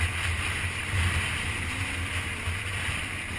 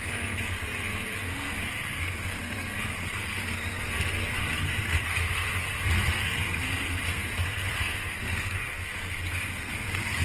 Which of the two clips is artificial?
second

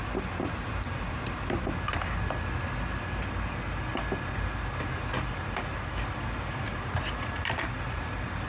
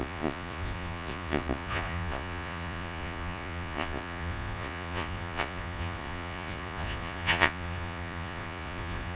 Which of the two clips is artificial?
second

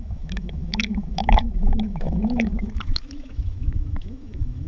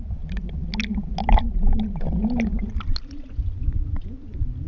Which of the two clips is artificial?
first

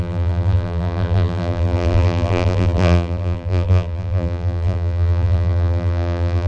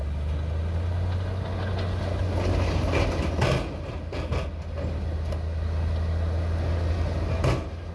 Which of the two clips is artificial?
first